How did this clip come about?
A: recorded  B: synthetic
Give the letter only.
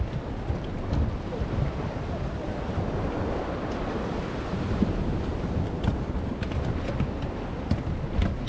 A